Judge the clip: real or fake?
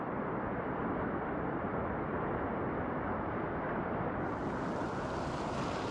real